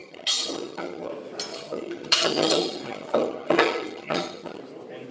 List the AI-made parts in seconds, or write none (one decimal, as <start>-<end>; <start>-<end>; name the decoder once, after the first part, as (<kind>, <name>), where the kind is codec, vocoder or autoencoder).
0.0-1.1 (vocoder, HiFi-GAN); 1.5-4.6